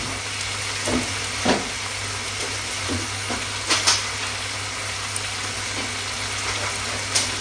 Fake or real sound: real